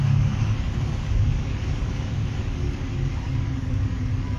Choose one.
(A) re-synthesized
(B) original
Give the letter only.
A